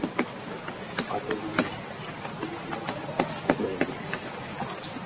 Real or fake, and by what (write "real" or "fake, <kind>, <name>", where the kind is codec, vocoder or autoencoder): real